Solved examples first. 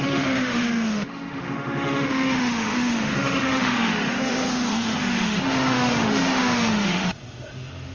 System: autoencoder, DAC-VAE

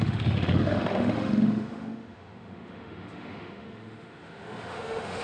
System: autoencoder, DAC-VAE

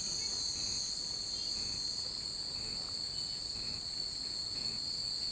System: none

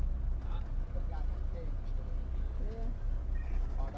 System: none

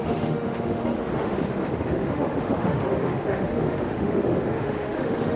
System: autoencoder, DAC-VAE